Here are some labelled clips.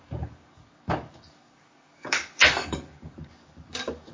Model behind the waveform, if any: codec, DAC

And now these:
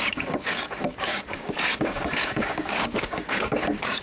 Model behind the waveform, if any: codec, DAC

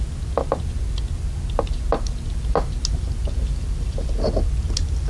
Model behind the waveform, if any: none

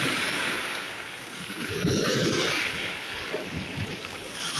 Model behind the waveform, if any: codec, DAC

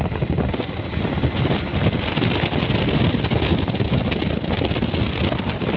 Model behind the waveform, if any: none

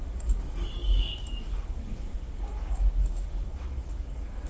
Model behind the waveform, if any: codec, DAC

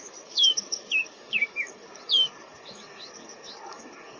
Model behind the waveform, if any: codec, DAC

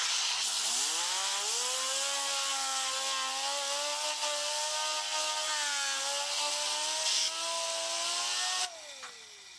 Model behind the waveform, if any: none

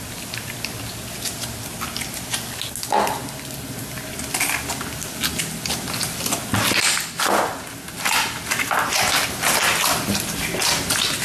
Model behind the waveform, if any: none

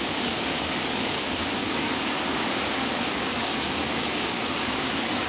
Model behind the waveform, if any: codec, DAC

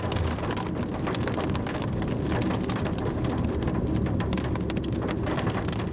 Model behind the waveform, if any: none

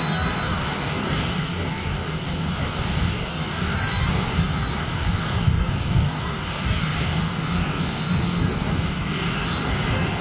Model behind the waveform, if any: codec, DAC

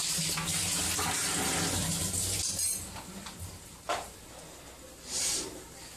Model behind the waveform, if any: none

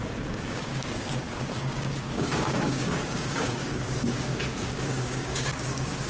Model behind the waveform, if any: codec, DAC